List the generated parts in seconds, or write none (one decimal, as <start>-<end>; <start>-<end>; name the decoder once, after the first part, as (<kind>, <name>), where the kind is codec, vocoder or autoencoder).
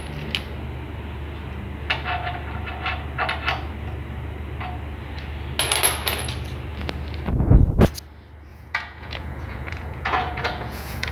8.5-11.1 (vocoder, Vocos)